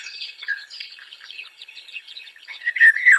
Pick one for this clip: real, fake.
fake